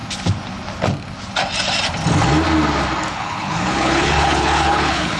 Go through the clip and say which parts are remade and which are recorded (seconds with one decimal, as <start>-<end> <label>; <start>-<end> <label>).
0.0-3.1 recorded; 3.1-5.2 remade